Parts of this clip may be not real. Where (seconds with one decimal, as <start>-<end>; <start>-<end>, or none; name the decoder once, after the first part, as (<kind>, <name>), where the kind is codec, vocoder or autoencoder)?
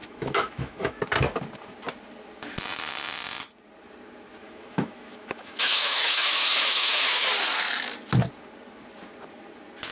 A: 0.0-1.0 (autoencoder, DAC-VAE); 4.4-7.3